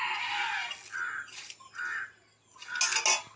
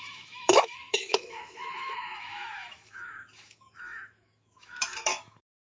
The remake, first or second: second